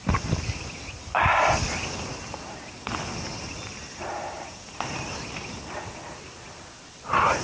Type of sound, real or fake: real